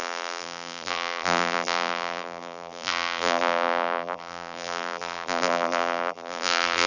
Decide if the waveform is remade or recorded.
remade